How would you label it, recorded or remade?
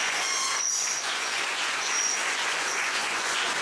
remade